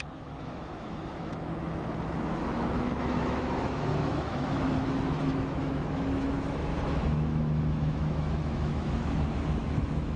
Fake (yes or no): yes